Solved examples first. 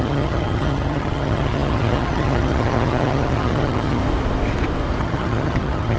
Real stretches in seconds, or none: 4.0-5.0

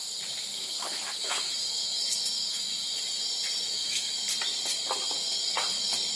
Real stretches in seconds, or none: 0.0-0.5; 3.0-3.6; 4.1-6.2

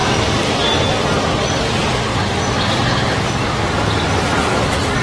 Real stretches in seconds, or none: 0.0-5.0